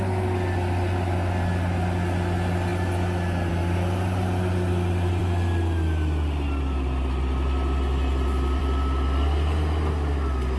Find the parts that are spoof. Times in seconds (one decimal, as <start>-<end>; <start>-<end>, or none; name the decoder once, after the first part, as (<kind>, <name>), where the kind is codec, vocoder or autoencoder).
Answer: none